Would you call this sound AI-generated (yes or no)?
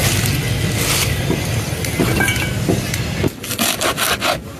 no